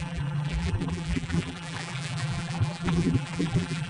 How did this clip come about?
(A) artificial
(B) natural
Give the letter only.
A